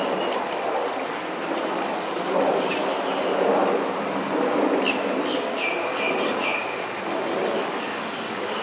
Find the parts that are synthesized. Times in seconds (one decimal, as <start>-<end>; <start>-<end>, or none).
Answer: none